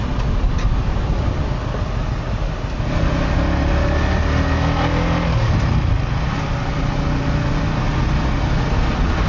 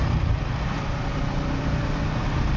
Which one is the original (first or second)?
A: first